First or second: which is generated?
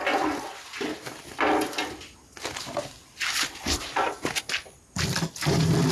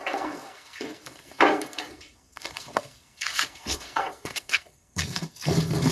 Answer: second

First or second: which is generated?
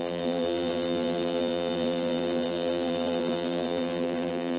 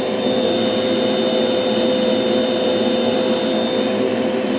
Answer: first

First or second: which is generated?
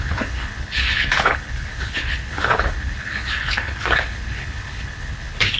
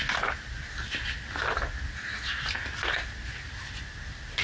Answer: first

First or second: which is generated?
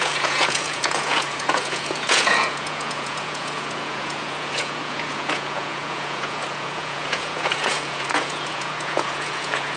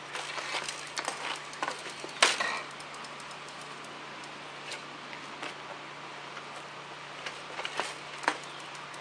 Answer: first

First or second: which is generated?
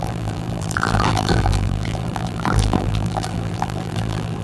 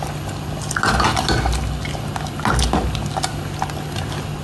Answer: first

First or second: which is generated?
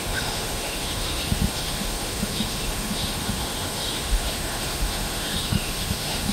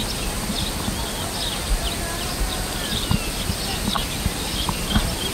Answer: first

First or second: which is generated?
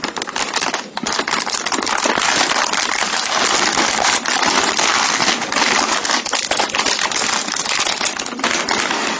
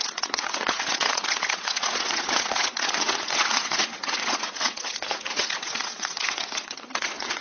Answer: second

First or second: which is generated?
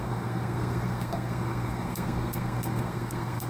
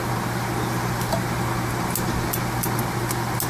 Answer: first